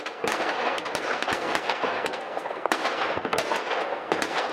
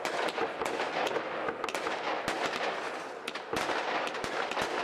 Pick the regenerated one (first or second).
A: first